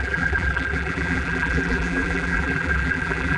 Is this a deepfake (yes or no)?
yes